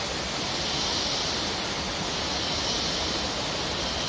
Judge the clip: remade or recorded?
recorded